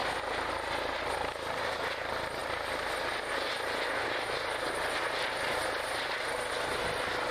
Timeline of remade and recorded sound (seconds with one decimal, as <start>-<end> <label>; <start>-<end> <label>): 0.0-7.3 recorded